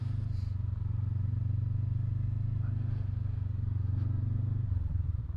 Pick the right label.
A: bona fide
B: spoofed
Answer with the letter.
A